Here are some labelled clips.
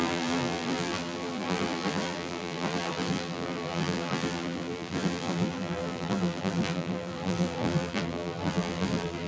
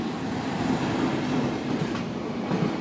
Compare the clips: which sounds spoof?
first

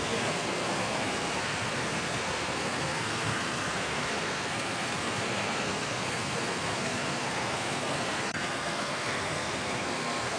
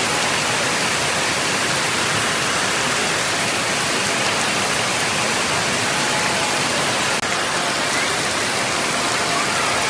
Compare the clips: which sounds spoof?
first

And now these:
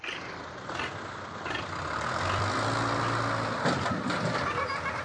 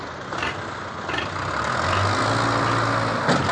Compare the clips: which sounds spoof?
first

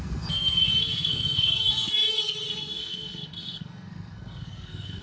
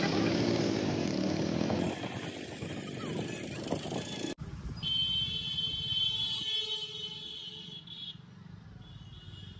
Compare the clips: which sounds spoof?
first